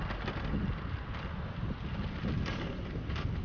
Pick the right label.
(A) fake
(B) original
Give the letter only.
B